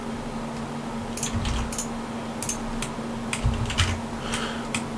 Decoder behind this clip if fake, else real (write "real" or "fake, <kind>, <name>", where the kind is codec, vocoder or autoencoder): real